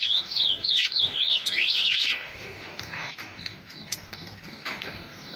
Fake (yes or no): yes